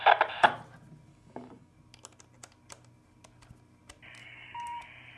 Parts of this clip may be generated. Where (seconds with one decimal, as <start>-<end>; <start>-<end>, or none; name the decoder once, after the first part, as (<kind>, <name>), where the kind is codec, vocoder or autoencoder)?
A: 1.1-1.7 (codec, DAC); 4.2-4.8